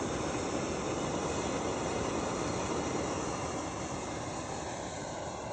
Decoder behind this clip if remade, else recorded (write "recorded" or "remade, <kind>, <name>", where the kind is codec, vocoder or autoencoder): recorded